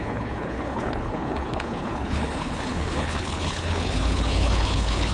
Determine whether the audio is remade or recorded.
remade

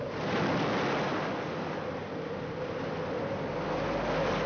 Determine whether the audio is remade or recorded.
recorded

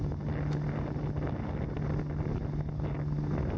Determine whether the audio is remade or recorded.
recorded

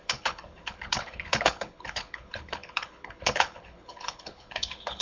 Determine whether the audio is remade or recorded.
remade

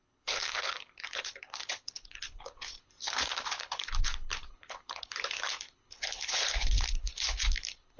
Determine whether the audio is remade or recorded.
remade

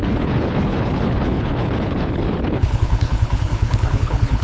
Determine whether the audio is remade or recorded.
remade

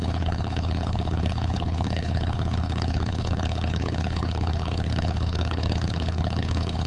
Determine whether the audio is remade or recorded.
remade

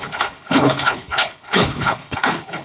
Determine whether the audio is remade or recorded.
remade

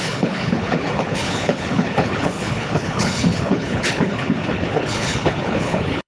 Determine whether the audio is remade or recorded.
remade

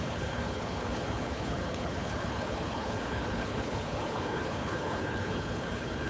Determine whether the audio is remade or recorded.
remade